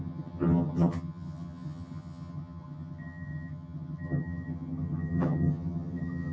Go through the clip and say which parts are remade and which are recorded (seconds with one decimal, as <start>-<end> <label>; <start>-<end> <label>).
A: 0.0-6.3 remade